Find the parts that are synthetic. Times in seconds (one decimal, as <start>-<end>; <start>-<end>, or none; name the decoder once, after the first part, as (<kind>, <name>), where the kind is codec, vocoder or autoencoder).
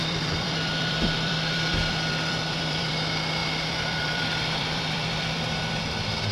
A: 0.0-2.9 (vocoder, BigVGAN v2); 3.4-5.8